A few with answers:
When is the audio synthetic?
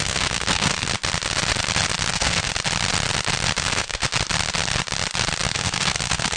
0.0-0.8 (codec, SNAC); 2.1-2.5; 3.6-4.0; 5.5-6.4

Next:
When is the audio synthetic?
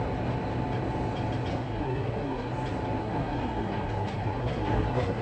1.5-2.5 (codec, SNAC); 3.0-5.2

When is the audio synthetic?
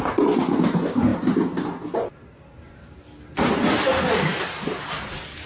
none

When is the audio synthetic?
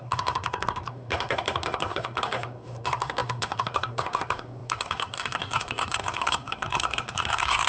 0.0-7.7 (codec, SNAC)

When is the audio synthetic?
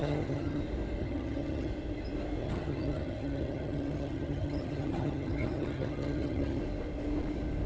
0.0-0.6 (vocoder, HiFi-GAN); 1.0-1.7; 2.4-6.6